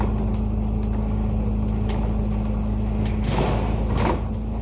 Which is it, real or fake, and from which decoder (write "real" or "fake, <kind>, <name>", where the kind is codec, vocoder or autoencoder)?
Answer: real